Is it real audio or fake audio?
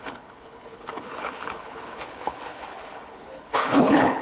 fake